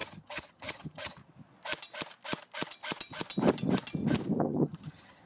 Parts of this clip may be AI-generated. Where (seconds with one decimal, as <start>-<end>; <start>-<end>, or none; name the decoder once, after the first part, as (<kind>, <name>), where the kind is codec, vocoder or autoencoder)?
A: 0.0-1.2 (vocoder, HiFi-GAN); 4.4-5.3